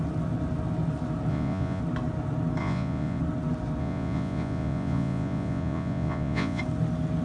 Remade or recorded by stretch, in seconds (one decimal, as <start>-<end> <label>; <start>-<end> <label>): 0.0-1.3 recorded; 1.3-1.8 remade; 1.8-2.6 recorded; 2.6-3.2 remade; 3.2-3.8 recorded; 3.8-6.6 remade; 6.6-7.2 recorded